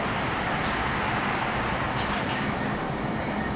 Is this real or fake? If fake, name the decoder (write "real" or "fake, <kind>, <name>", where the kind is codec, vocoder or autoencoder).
real